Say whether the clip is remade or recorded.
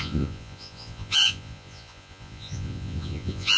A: remade